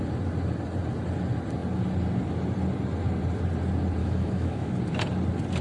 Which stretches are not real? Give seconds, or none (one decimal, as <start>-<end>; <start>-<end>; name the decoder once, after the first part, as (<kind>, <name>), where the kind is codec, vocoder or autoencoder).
4.0-4.7 (autoencoder, DAC-VAE)